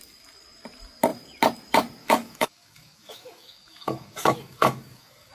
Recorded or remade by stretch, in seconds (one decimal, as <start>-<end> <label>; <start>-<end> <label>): 0.0-2.0 recorded; 2.0-5.3 remade